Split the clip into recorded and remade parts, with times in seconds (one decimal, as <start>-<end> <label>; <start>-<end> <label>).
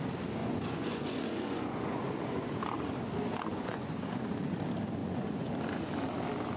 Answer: 0.0-0.4 recorded; 0.4-2.6 remade; 2.6-3.5 recorded; 3.5-4.2 remade; 4.2-5.0 recorded; 5.0-5.5 remade; 5.5-6.6 recorded